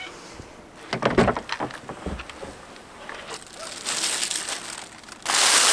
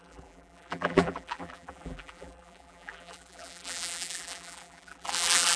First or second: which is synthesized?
second